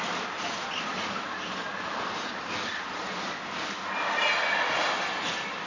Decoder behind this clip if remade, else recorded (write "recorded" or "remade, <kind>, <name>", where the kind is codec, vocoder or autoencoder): recorded